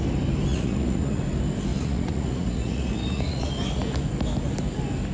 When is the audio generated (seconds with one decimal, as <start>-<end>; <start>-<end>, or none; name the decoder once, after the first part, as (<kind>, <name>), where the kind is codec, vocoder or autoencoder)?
0.5-1.2 (vocoder, Vocos); 1.7-3.4